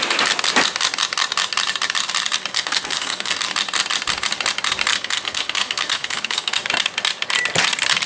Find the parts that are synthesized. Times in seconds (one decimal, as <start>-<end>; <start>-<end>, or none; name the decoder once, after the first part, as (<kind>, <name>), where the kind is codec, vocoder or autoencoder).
2.5-3.4 (codec, SNAC); 4.9-6.6